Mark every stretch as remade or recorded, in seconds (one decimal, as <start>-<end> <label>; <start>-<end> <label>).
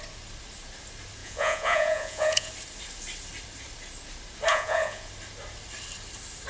0.0-1.2 recorded; 1.2-2.5 remade; 2.5-4.5 recorded; 4.5-5.1 remade; 5.1-6.5 recorded